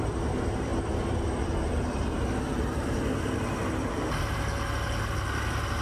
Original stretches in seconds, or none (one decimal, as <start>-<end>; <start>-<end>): 0.0-5.8